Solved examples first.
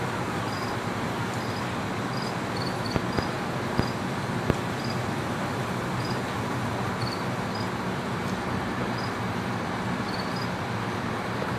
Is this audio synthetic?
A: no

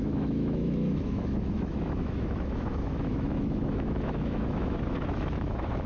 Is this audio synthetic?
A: yes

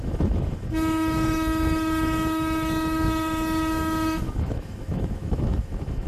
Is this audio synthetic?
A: yes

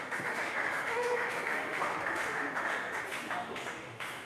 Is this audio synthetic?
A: yes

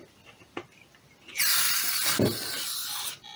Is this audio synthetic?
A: no